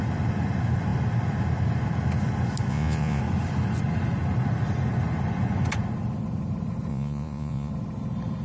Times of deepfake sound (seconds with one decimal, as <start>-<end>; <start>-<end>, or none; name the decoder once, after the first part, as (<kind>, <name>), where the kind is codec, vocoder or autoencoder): 2.7-3.2 (vocoder, Vocos); 6.9-7.7